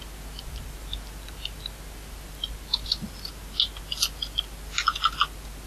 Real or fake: real